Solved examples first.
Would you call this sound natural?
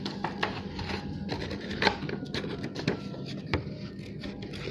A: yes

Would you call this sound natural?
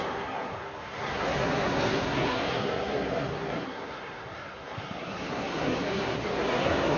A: no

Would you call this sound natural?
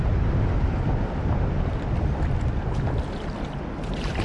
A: yes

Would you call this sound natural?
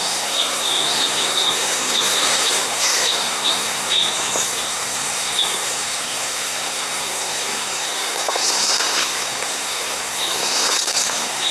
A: no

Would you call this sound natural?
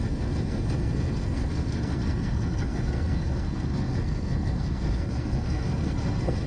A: no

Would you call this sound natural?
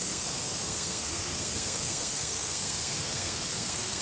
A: no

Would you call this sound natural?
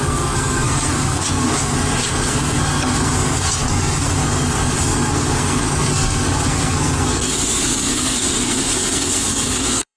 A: no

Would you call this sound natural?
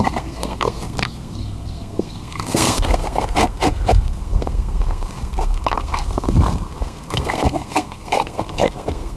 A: no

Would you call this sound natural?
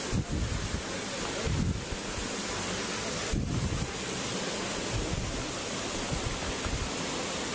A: yes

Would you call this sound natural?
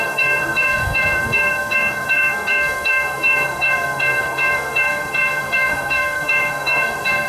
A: no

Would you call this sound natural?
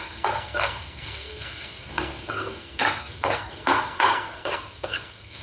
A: no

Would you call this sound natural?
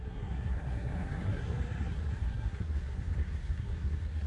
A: no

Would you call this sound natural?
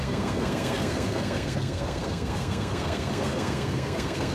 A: no